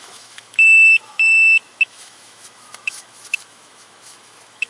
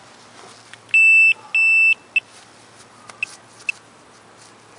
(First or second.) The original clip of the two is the second